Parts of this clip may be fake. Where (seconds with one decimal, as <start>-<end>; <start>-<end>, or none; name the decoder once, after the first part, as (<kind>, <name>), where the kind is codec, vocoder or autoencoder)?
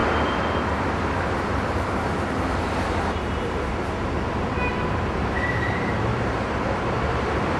2.9-3.7 (vocoder, BigVGAN v2); 4.7-7.6